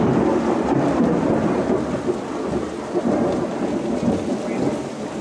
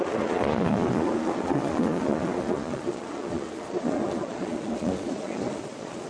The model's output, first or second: second